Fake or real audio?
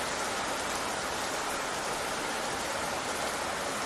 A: real